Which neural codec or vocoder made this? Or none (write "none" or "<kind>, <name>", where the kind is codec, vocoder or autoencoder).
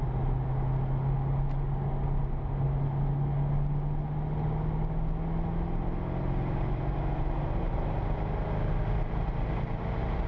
none